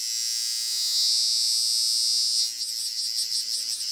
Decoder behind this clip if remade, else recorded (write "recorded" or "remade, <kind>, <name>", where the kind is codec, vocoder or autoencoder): recorded